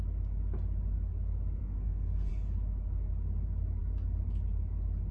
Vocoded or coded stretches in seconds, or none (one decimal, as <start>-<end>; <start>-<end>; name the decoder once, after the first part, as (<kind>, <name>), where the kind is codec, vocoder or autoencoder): 1.6-2.3 (codec, SNAC)